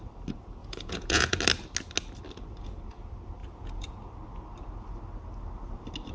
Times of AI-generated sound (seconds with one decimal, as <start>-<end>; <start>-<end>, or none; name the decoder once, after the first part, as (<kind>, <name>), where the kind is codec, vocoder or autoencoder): 0.6-1.4 (vocoder, Vocos); 3.4-4.0